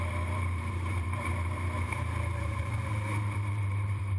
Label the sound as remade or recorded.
remade